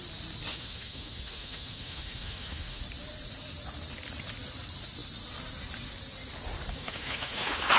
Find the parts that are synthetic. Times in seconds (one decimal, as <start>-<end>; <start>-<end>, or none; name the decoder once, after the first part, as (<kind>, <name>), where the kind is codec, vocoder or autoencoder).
0.5-2.8 (autoencoder, DAC-VAE); 6.7-7.8